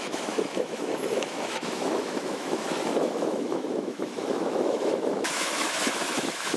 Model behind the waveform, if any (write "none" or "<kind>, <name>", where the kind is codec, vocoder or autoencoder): autoencoder, DAC-VAE